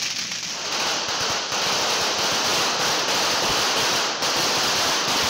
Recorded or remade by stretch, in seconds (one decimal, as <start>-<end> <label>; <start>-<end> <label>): 0.0-5.3 recorded